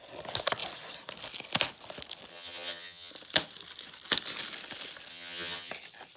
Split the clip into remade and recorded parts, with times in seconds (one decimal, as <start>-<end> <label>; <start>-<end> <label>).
0.0-2.3 recorded; 2.3-3.1 remade; 3.1-5.1 recorded; 5.1-5.7 remade; 5.7-6.2 recorded